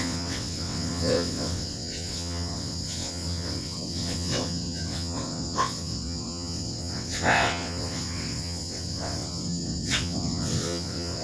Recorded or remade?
remade